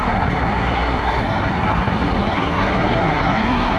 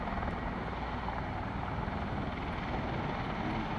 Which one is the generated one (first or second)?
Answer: first